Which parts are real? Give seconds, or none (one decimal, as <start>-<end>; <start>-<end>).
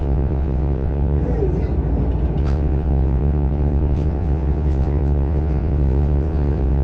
1.2-2.4